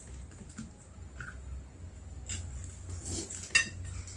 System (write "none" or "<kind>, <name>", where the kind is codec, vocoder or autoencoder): none